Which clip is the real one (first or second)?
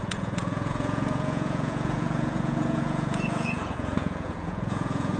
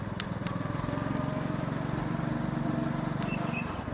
second